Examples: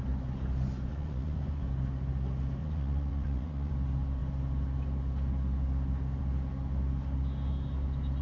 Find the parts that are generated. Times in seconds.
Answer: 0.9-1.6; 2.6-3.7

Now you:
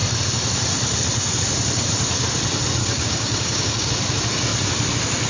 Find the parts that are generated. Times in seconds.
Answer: 2.8-3.9

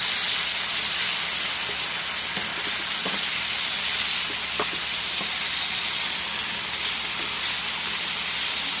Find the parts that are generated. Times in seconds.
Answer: none

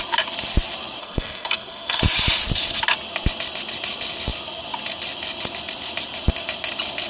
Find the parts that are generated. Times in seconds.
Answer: 1.0-2.0